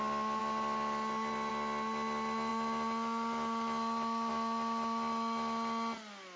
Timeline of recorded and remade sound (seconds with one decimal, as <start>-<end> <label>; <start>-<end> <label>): 0.0-6.4 recorded